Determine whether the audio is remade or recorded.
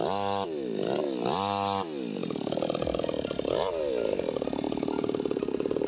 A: recorded